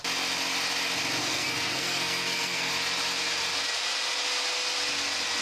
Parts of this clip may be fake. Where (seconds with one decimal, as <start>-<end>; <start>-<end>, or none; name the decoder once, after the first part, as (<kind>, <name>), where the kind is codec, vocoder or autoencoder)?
1.2-2.7 (codec, SNAC)